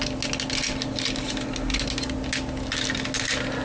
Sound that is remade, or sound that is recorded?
recorded